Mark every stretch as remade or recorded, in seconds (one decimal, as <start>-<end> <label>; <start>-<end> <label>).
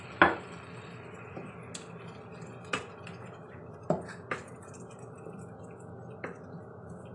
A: 0.0-3.6 recorded; 3.6-4.5 remade; 4.5-7.1 recorded